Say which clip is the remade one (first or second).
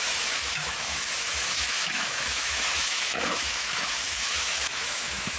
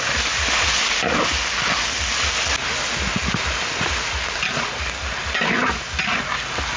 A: first